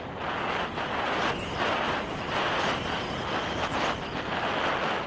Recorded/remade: recorded